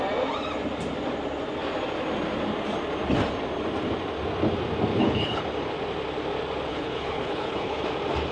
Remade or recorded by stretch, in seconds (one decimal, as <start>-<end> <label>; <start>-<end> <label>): 0.0-4.9 recorded; 4.9-5.4 remade; 5.4-6.7 recorded; 6.7-7.8 remade; 7.8-8.3 recorded